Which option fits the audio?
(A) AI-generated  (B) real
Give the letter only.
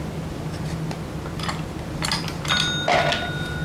B